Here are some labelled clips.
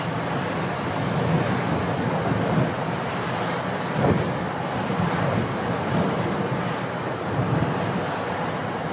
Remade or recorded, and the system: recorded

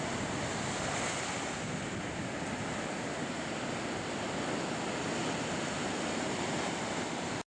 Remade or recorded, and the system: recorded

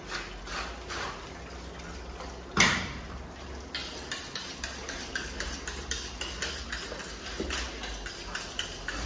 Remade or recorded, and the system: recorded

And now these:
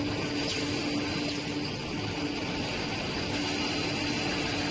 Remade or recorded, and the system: recorded